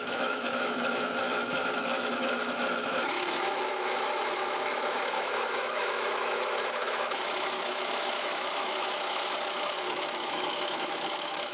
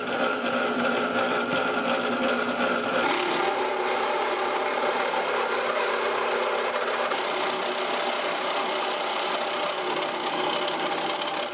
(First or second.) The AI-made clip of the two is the first